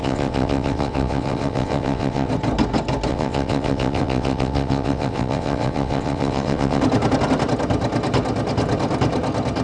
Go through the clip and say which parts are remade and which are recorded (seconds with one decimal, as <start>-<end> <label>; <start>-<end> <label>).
0.0-2.3 remade; 2.3-3.1 recorded; 3.1-6.8 remade; 6.8-9.6 recorded